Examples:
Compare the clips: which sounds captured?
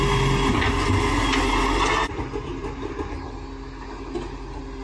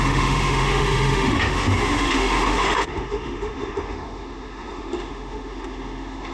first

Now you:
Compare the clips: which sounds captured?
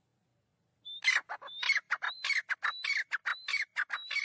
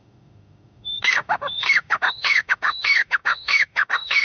first